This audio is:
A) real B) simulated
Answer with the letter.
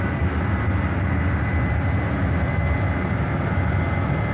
A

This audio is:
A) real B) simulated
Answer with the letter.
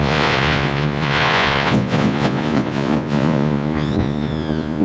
B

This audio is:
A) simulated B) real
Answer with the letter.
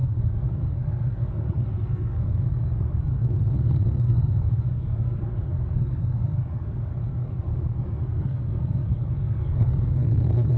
A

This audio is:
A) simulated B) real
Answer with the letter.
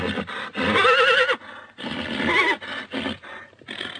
B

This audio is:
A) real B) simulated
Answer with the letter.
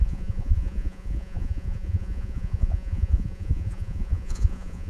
B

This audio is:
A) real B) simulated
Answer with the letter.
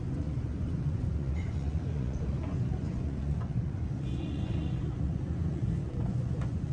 B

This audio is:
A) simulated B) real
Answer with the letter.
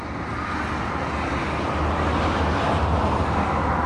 B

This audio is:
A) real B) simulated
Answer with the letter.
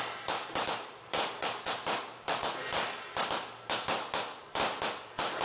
A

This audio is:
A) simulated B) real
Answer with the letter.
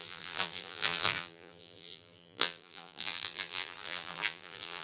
A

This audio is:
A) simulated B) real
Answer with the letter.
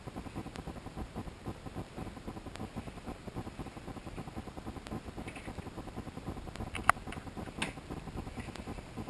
B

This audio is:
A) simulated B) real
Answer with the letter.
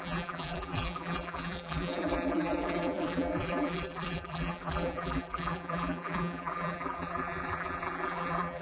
A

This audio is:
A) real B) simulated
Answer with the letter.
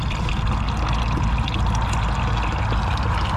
A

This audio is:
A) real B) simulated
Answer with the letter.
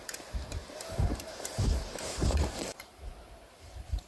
B